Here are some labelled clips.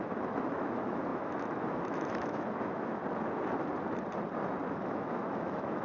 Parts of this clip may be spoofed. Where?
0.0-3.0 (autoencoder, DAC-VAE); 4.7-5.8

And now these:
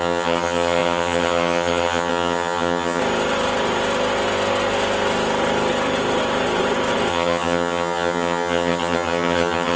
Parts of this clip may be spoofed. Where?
0.0-3.0 (vocoder, HiFi-GAN); 7.1-9.8